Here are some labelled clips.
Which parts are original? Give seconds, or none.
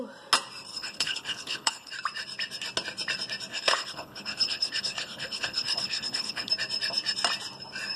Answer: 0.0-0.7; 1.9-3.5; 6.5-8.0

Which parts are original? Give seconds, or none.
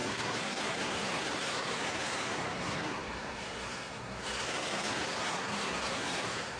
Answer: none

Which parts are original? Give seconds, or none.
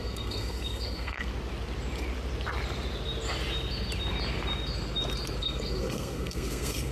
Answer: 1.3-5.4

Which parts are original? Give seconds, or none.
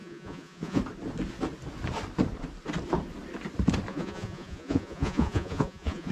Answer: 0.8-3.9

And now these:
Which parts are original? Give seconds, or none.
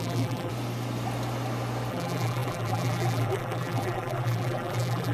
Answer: 0.5-1.9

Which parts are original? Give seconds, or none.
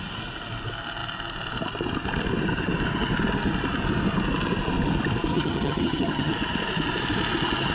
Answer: 0.0-5.3; 6.3-7.7